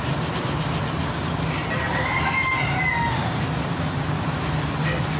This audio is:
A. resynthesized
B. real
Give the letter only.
B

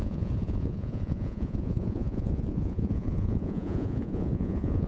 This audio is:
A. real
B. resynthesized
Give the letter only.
B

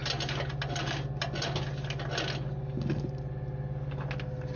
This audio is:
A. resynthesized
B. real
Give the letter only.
B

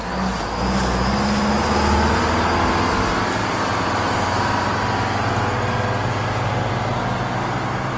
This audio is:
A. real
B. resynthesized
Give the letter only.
A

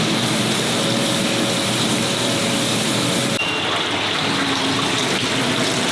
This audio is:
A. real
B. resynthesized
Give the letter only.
A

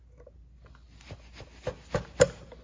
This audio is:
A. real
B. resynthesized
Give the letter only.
A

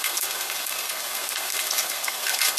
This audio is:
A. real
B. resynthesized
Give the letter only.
B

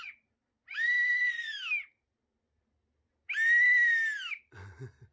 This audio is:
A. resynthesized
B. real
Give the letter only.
B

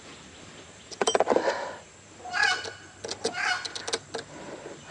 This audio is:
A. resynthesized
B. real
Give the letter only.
B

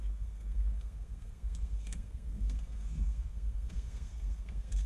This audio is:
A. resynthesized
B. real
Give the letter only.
A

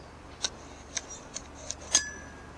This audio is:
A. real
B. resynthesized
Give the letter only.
A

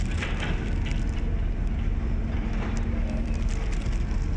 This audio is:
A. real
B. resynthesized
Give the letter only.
B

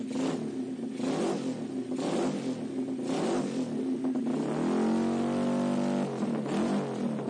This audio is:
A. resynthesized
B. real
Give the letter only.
B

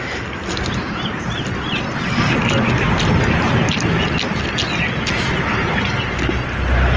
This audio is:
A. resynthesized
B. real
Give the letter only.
B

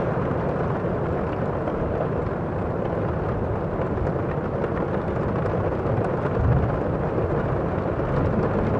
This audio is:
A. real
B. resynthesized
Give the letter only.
A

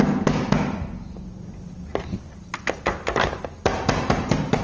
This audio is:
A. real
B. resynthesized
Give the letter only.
A